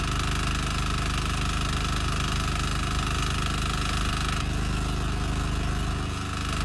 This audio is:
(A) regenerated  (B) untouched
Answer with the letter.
B